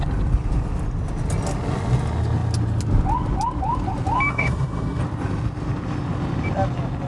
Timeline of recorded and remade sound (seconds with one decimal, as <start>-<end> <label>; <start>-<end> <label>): 0.0-4.3 recorded; 4.3-5.0 remade; 5.0-7.1 recorded